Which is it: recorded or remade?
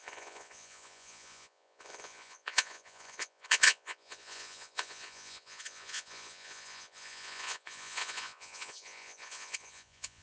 remade